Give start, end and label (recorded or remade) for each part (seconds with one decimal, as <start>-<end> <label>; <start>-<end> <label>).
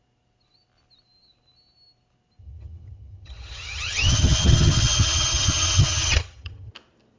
0.0-2.4 recorded; 2.4-6.7 remade; 6.7-7.2 recorded